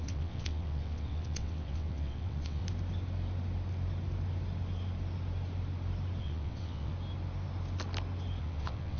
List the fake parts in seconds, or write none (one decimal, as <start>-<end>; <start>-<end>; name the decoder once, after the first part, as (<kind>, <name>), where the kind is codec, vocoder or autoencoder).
0.0-2.6 (vocoder, WaveNeXt); 6.2-6.9; 8.4-9.0